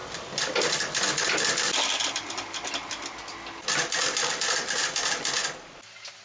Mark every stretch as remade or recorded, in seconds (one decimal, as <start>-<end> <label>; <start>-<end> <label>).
0.0-6.2 recorded